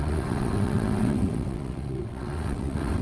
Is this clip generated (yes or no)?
yes